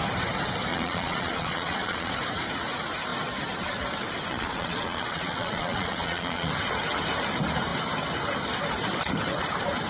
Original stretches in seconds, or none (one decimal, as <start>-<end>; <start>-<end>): 0.0-0.7; 2.1-4.3; 6.5-9.9